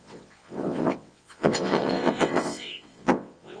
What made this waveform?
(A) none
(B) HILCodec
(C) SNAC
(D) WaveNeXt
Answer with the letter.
D